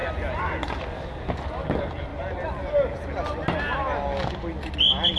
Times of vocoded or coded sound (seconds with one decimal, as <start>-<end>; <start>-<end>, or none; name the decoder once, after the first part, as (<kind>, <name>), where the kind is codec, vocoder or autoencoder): none